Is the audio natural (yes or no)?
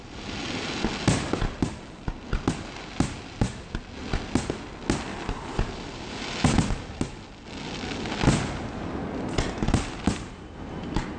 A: yes